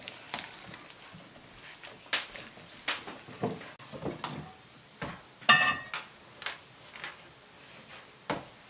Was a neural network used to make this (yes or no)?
no